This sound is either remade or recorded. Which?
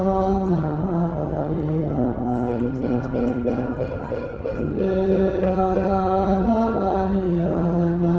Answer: remade